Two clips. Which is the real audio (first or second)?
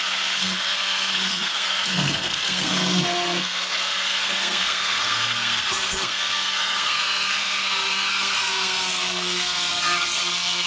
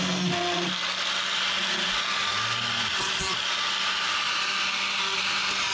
second